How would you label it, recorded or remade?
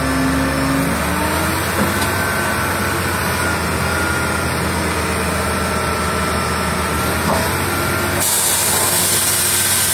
recorded